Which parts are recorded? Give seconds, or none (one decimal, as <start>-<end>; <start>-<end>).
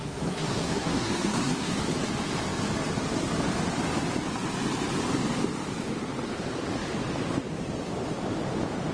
1.8-8.9